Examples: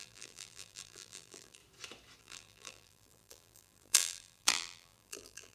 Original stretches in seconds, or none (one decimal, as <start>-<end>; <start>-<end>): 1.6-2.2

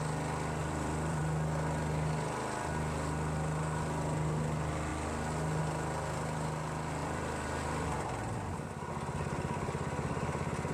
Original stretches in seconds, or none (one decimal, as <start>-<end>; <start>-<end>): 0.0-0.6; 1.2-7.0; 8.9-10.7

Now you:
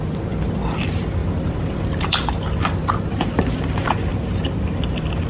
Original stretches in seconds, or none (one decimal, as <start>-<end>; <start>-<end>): 0.0-1.2; 3.3-4.1; 4.7-5.3

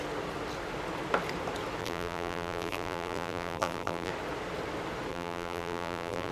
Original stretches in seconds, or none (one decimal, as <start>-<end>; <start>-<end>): 0.0-1.8; 4.1-5.1

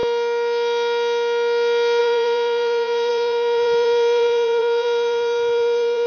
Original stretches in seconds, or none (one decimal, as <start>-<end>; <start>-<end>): 0.0-2.0

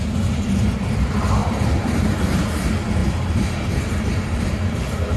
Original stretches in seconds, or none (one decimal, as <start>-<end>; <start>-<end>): 0.0-1.4; 2.4-3.0